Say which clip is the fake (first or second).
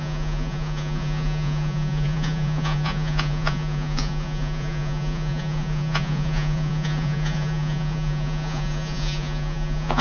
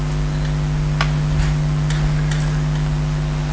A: first